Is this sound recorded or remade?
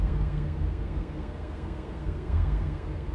remade